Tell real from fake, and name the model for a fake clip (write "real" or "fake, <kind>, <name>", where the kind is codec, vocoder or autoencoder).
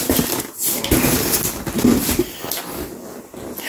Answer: real